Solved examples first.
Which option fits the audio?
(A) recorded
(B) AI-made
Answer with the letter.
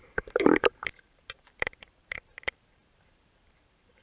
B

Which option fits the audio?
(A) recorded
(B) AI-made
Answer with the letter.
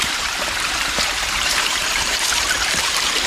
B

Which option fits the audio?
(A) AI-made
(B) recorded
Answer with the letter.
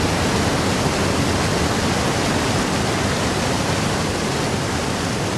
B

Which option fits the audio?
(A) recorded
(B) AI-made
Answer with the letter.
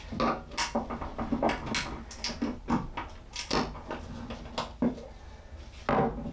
A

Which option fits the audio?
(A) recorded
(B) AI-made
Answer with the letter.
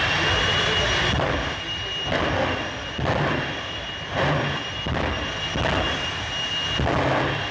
A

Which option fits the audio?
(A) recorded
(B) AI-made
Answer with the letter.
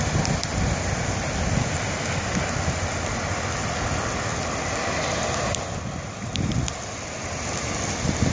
A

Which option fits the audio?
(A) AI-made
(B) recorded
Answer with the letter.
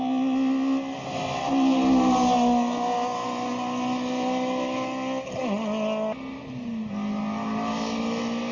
B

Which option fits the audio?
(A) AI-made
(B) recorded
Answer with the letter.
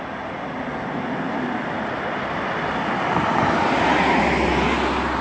B